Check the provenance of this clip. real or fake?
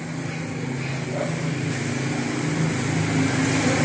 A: real